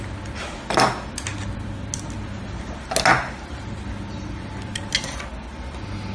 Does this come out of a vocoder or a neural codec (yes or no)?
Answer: no